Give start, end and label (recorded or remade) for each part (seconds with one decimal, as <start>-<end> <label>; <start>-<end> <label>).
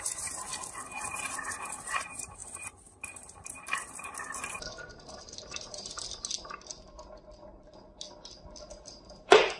0.0-0.5 remade; 0.5-1.0 recorded; 1.0-6.0 remade; 6.0-9.0 recorded; 9.0-9.6 remade